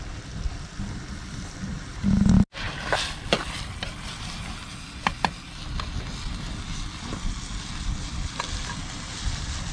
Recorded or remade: recorded